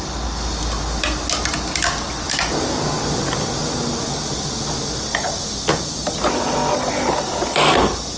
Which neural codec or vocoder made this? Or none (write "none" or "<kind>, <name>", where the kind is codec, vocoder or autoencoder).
none